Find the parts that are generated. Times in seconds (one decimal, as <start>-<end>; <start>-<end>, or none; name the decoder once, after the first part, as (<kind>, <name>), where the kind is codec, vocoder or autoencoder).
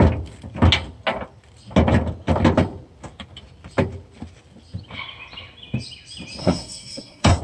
6.4-7.4 (codec, SNAC)